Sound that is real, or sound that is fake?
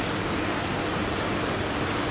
real